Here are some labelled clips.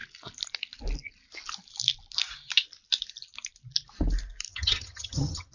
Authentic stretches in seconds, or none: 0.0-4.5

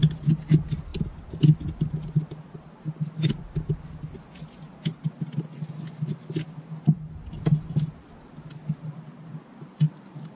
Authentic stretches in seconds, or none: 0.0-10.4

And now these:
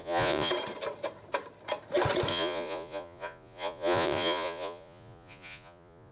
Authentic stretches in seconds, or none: 0.5-2.3

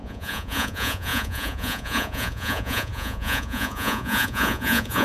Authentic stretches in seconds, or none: none

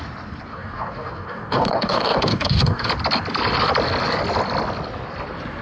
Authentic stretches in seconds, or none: 0.0-0.5; 2.9-5.6

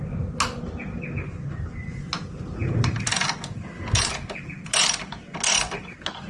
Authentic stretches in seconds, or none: 0.0-6.3

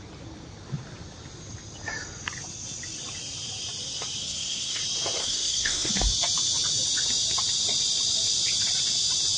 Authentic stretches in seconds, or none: 0.0-4.2; 4.8-5.2; 5.9-9.4